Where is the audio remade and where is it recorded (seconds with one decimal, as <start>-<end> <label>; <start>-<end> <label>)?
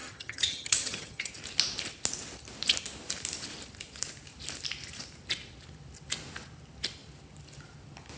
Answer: 0.0-1.3 remade; 1.3-8.2 recorded